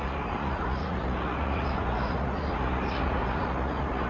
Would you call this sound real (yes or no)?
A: no